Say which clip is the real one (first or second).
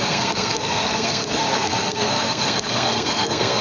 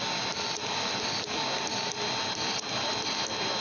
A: second